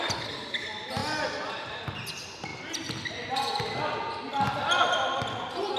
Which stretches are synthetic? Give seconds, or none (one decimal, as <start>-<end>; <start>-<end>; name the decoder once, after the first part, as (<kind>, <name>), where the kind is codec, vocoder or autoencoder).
none